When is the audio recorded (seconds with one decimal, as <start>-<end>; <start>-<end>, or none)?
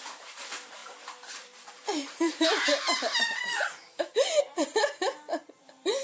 none